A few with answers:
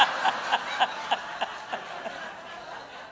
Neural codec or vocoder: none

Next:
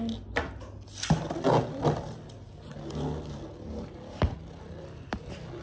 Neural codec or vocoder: none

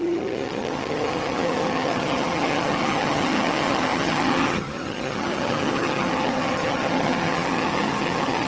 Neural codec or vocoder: vocoder, HiFi-GAN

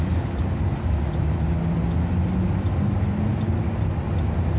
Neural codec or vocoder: none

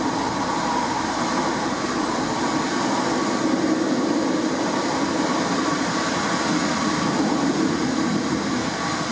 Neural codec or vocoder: none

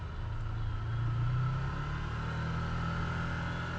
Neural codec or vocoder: none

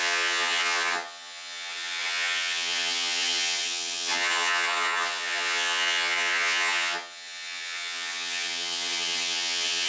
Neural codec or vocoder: vocoder, HiFi-GAN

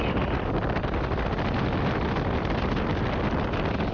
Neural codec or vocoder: none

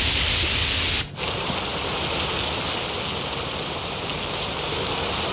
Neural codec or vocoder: none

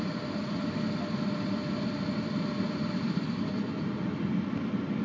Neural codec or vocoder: none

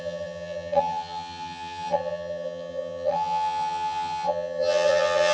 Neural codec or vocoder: vocoder, HiFi-GAN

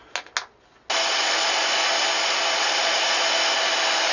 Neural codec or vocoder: none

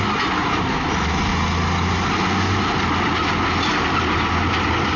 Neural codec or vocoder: none